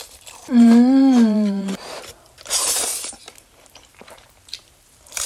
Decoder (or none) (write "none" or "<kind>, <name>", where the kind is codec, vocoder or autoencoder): vocoder, BigVGAN v2